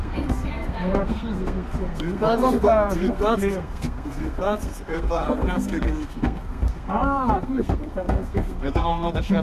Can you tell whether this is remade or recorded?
remade